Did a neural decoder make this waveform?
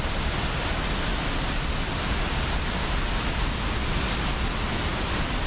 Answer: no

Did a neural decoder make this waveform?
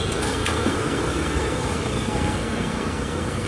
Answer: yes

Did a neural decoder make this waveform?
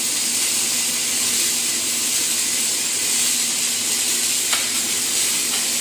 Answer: no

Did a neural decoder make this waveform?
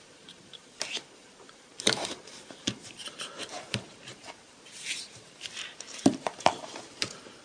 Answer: yes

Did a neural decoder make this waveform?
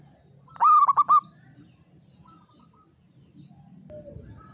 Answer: no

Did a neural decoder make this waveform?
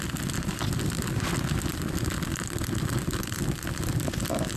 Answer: no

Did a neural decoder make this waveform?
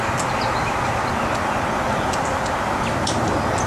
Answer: no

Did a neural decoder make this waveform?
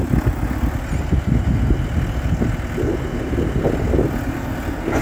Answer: no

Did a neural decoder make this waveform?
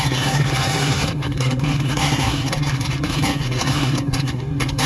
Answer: yes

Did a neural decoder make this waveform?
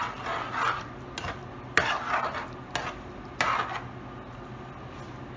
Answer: no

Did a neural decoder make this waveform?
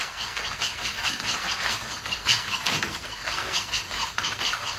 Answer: yes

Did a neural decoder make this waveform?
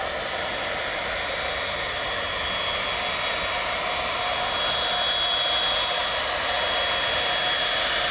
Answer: no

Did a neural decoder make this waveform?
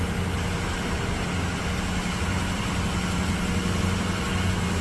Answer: no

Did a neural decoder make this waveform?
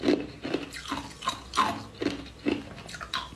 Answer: no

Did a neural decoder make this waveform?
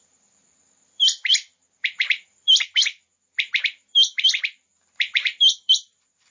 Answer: yes